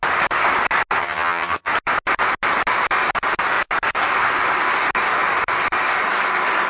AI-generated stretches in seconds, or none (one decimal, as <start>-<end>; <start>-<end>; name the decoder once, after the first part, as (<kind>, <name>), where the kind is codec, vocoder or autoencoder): 1.0-1.7 (vocoder, HiFi-GAN)